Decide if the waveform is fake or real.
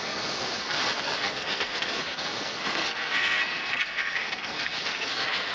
fake